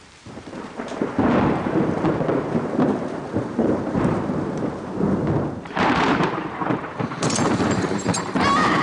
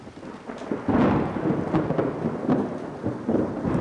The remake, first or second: first